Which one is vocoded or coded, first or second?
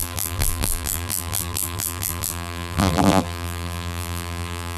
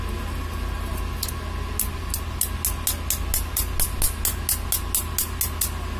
first